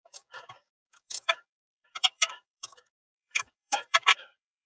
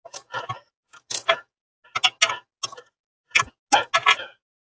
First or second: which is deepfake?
first